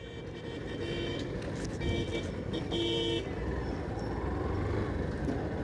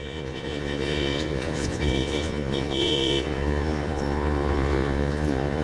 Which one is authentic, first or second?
first